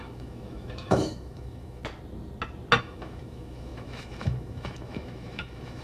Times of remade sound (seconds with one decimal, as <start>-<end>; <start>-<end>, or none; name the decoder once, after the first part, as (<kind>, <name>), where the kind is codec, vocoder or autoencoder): 0.0-1.8 (autoencoder, DAC-VAE); 2.8-5.8